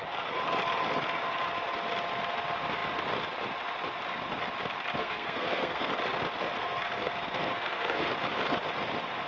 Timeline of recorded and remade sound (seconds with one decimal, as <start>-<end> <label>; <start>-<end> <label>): 0.0-5.0 recorded; 5.0-5.9 remade; 5.9-6.6 recorded; 6.6-8.1 remade; 8.1-9.3 recorded